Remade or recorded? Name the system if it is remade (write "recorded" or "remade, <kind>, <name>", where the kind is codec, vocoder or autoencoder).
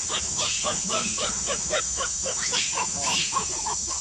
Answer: remade, autoencoder, DAC-VAE